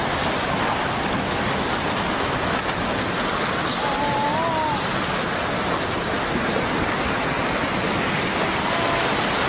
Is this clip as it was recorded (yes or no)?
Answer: yes